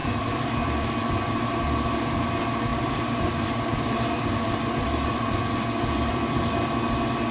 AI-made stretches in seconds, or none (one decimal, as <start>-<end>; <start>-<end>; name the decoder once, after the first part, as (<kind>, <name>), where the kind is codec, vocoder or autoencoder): 0.0-1.5 (vocoder, BigVGAN v2); 2.7-7.3